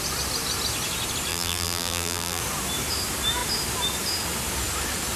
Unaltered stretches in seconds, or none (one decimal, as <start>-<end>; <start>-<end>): 0.0-1.3; 2.4-5.2